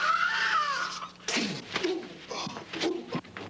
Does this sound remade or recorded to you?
recorded